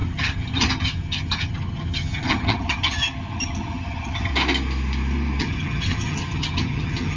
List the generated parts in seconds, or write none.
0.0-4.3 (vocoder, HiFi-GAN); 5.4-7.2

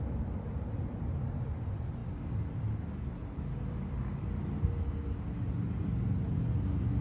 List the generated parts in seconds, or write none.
none

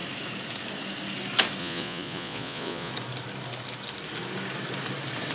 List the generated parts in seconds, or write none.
1.6-2.9 (vocoder, Vocos)

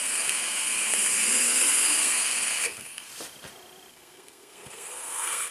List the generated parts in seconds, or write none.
0.0-3.1 (codec, SNAC); 3.9-5.5

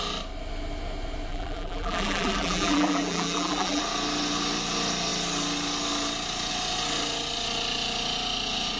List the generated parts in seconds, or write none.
1.3-3.8 (vocoder, BigVGAN v2)

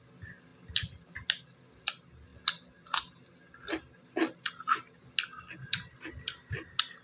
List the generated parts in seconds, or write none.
none